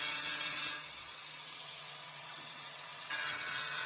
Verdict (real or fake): fake